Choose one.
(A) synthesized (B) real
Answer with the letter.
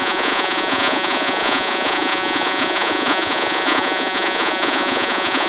A